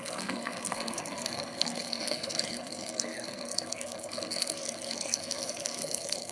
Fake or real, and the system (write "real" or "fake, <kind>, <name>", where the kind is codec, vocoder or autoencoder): fake, codec, SNAC